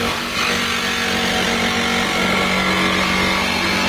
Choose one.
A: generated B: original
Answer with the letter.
B